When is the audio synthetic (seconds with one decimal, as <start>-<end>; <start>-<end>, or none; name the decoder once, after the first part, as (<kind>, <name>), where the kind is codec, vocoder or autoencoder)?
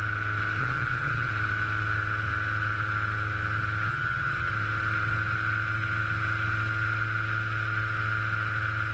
0.6-1.3 (vocoder, HiFi-GAN); 3.9-4.5